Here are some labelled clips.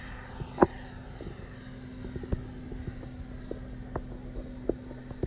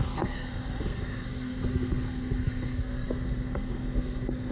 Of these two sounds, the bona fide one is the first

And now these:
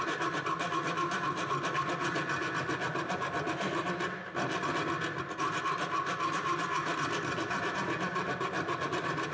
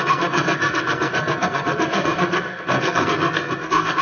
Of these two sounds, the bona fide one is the first